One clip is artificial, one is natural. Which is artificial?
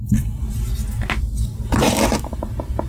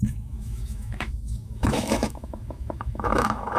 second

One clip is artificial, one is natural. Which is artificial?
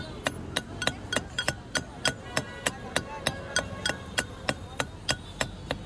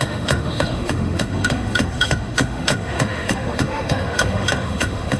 second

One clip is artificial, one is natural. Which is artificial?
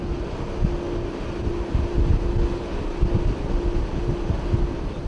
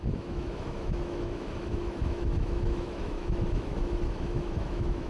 second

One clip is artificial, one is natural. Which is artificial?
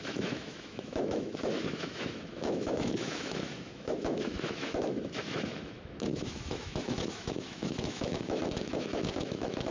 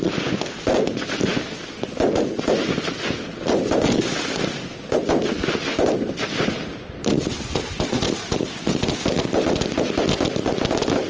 first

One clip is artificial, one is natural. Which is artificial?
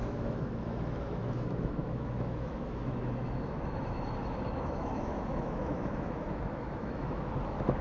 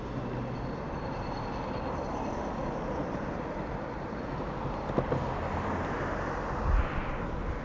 first